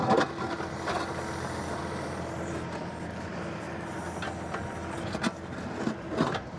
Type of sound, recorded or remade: recorded